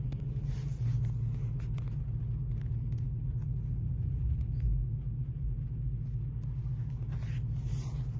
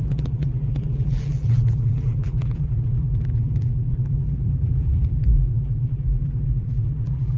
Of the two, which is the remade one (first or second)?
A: second